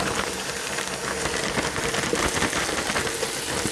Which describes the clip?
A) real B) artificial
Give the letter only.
A